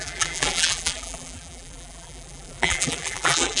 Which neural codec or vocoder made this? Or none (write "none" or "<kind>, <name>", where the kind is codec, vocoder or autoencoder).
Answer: vocoder, BigVGAN v2